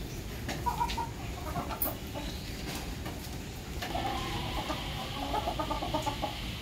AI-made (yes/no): no